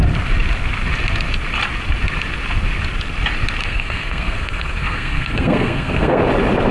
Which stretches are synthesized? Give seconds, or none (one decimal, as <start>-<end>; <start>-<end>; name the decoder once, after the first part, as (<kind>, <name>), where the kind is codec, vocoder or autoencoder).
3.6-6.2 (codec, SNAC)